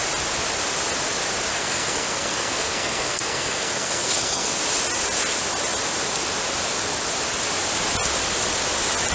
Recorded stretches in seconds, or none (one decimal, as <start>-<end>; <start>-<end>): 0.0-1.5; 4.6-9.1